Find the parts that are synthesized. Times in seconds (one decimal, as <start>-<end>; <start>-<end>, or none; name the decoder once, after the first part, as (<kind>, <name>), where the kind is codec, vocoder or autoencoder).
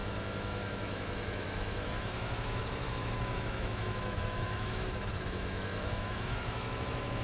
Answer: 0.0-7.2 (autoencoder, DAC-VAE)